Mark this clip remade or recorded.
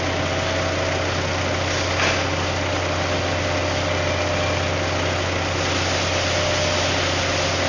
recorded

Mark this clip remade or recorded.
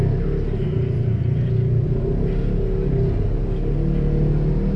recorded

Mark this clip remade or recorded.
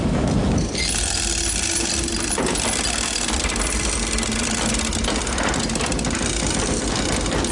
recorded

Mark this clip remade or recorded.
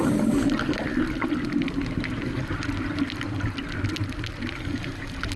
recorded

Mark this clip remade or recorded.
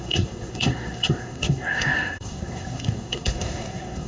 remade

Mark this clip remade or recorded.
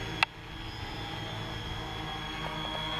recorded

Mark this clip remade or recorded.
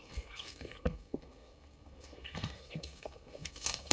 remade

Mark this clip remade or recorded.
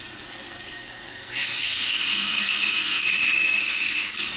remade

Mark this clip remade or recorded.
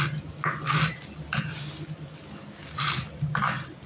recorded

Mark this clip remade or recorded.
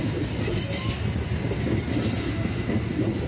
recorded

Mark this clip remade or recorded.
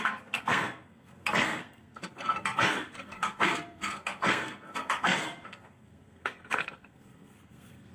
remade